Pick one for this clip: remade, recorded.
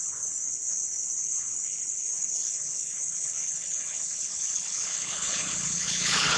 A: remade